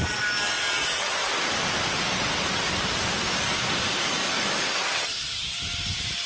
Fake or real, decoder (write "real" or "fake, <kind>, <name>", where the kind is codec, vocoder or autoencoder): fake, vocoder, BigVGAN v2